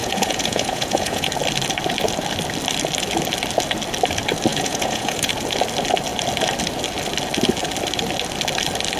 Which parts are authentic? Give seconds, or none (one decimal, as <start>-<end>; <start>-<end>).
1.3-4.5; 5.3-9.0